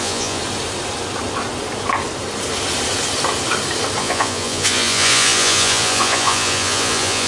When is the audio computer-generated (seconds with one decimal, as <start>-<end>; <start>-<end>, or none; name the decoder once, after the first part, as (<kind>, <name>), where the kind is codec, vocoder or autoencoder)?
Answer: 0.0-0.4 (vocoder, Vocos); 4.0-7.3